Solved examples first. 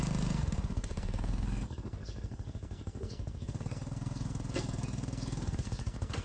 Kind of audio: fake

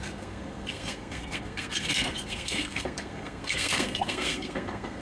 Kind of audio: fake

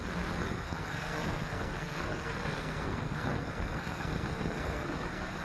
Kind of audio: fake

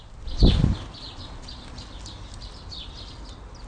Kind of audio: real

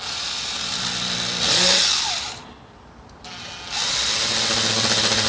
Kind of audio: real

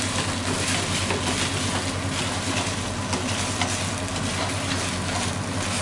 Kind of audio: real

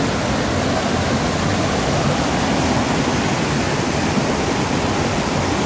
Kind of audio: real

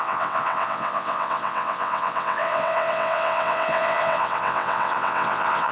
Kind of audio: fake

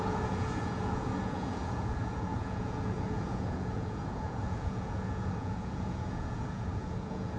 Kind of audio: fake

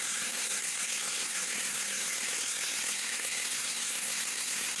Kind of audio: fake